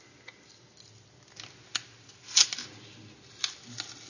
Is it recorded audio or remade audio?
recorded